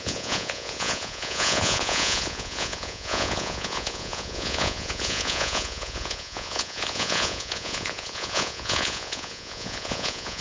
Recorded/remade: remade